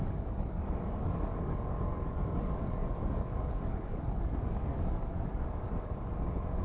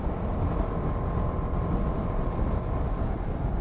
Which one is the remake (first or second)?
first